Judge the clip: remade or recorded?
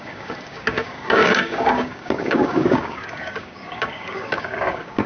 remade